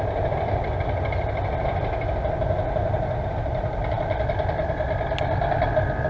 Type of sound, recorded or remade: recorded